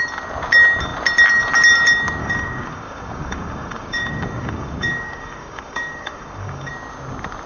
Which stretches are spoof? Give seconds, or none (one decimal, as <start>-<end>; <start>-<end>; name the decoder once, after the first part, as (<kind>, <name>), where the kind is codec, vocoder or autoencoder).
2.2-6.7 (codec, DAC)